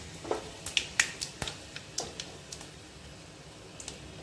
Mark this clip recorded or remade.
recorded